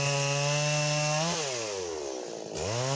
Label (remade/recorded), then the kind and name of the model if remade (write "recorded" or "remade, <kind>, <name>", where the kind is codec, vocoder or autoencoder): recorded